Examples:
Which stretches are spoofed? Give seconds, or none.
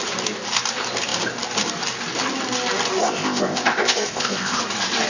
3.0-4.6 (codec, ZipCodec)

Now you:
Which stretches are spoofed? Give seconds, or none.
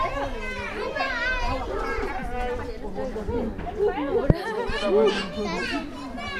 none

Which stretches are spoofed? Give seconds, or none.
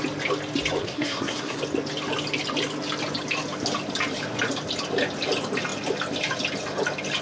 0.8-1.6 (codec, SNAC)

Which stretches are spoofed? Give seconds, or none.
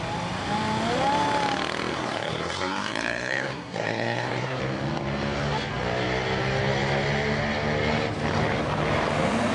1.9-4.6 (codec, SNAC)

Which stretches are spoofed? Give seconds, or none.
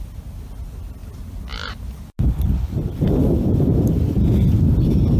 none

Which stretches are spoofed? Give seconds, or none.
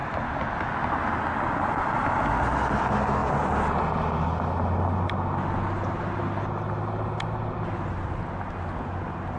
none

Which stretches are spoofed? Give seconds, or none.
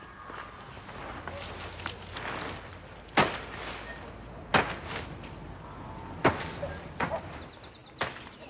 none